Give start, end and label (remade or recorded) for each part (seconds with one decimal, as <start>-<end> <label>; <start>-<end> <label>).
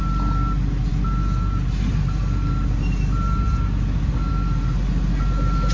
0.0-5.7 recorded